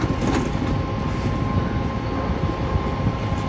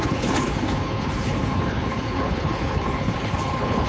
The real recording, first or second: first